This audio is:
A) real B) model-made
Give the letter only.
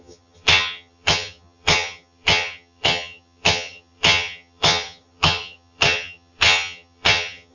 B